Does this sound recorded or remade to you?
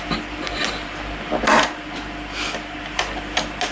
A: recorded